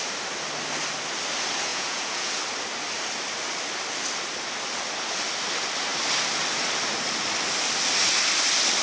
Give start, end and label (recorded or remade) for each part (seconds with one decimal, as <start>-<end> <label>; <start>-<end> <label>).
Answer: 0.0-1.7 recorded; 1.7-2.4 remade; 2.4-8.8 recorded